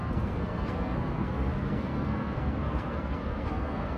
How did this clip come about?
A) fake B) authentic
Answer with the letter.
A